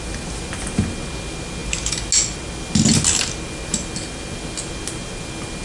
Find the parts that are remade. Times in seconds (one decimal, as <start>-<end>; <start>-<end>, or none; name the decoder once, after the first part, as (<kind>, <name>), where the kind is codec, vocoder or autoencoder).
none

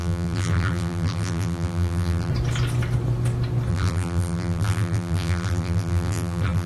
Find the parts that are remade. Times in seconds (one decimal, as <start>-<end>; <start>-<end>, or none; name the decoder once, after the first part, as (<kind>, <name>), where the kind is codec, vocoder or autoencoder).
0.0-2.3 (vocoder, BigVGAN v2); 3.7-6.7

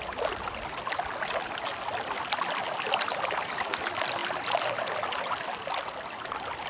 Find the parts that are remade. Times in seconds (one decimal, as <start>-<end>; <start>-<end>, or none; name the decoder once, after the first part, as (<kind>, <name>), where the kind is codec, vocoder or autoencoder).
none

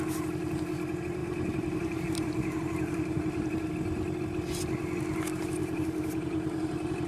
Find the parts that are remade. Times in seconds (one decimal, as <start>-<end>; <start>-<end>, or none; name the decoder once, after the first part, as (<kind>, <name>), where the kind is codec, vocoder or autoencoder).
1.2-3.7 (vocoder, BigVGAN v2); 5.6-7.1

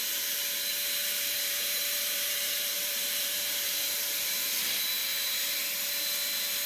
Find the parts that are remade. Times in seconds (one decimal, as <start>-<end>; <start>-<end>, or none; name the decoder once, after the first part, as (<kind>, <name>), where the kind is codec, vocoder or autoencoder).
1.0-3.9 (vocoder, BigVGAN v2)

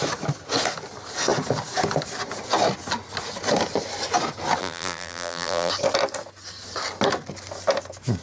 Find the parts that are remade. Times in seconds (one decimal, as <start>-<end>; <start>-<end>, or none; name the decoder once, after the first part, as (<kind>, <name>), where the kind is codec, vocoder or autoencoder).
4.6-5.7 (vocoder, BigVGAN v2)